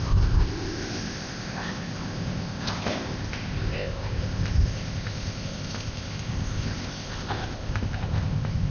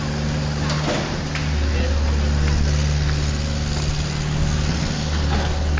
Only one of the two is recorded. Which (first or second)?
second